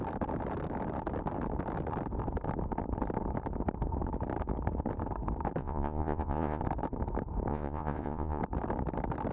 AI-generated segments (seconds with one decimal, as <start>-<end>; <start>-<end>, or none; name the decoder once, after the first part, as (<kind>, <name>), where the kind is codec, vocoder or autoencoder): 5.6-6.6 (vocoder, Vocos); 7.5-8.4